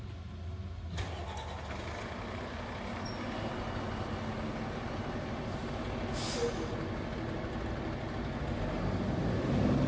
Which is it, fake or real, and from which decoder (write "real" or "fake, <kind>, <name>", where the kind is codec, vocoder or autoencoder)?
real